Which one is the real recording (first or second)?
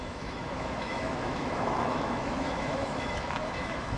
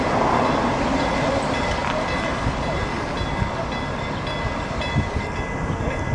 second